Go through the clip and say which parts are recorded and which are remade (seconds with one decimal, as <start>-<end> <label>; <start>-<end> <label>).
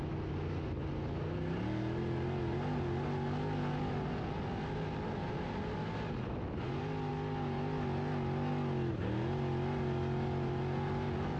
0.0-11.4 recorded